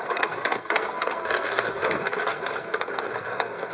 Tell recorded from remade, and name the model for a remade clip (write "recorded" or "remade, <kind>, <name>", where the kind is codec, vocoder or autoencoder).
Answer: remade, codec, SNAC